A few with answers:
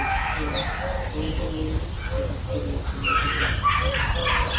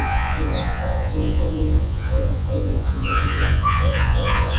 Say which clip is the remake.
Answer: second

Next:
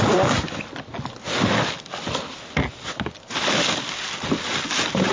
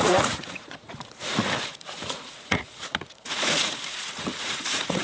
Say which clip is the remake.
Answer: second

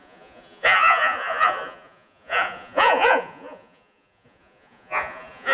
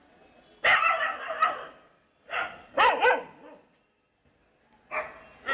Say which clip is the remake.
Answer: first